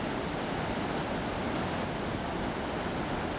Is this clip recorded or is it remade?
recorded